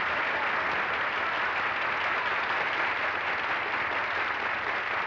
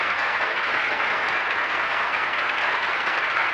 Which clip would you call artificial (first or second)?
second